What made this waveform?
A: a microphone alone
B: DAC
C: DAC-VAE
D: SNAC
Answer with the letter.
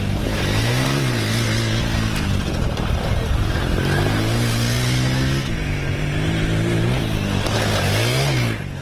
A